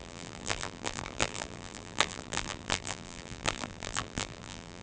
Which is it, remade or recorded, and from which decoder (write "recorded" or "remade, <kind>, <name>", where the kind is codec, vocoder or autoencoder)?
remade, vocoder, BigVGAN v2